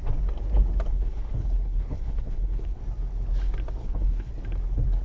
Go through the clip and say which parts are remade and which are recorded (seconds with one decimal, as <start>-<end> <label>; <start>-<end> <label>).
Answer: 0.0-0.9 recorded; 0.9-2.8 remade; 2.8-3.8 recorded; 3.8-4.3 remade; 4.3-5.0 recorded